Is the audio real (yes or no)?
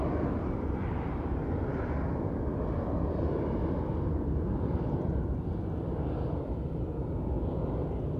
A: yes